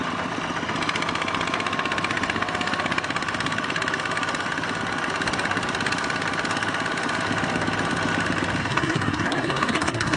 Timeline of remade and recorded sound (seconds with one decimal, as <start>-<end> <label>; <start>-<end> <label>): 0.0-8.6 recorded; 8.6-10.2 remade